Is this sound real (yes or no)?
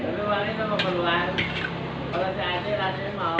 yes